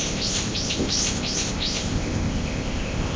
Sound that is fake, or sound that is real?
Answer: fake